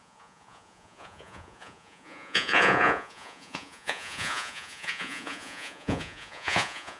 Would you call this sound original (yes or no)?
no